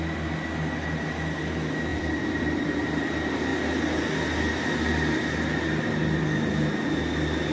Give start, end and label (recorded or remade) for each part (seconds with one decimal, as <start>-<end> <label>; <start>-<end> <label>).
0.0-1.9 recorded; 1.9-3.1 remade; 3.1-7.5 recorded